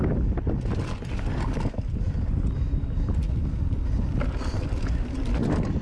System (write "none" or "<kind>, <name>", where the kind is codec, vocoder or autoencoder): none